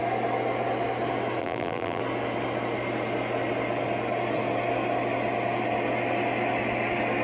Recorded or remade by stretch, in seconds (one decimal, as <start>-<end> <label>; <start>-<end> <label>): 0.0-1.4 recorded; 1.4-2.0 remade; 2.0-7.2 recorded